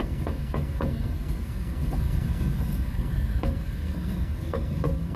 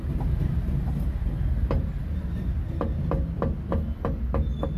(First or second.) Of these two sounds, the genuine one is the second